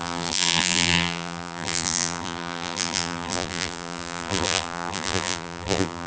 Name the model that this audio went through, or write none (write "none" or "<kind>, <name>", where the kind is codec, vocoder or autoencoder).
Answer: vocoder, BigVGAN v2